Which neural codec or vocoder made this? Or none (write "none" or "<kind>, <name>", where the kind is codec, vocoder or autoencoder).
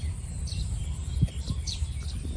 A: vocoder, BigVGAN v2